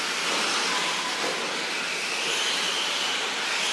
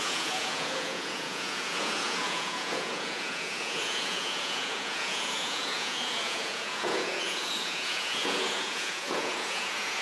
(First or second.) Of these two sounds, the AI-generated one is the second